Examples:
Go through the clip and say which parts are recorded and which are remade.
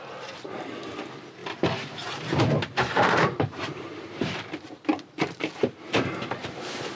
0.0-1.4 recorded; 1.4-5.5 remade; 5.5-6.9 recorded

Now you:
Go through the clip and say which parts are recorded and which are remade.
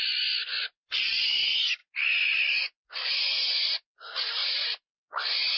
0.0-4.4 recorded; 4.4-4.9 remade; 4.9-5.6 recorded